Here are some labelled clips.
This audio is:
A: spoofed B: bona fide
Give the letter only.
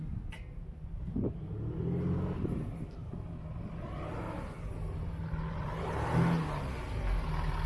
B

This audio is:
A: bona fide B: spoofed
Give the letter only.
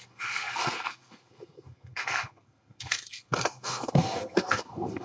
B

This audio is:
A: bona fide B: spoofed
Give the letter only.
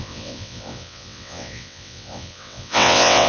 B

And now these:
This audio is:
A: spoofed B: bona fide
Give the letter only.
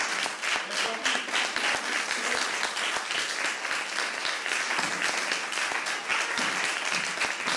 B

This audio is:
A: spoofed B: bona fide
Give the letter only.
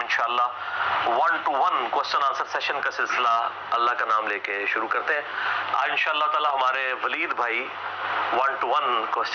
B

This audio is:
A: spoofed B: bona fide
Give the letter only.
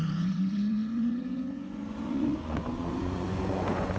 A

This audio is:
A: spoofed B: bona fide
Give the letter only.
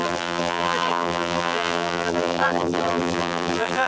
A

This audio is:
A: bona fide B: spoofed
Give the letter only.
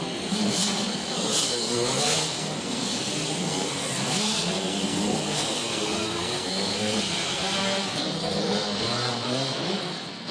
B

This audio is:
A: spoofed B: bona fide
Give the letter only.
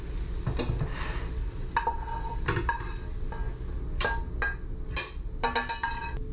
B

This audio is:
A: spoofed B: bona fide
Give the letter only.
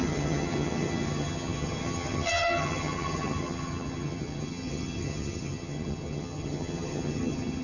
A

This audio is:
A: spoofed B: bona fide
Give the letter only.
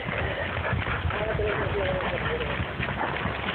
B